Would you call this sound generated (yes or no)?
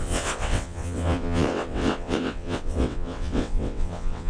yes